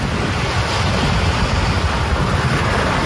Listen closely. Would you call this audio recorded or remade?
recorded